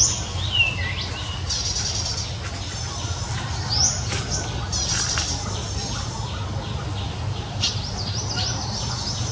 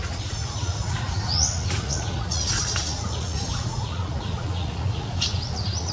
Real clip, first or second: first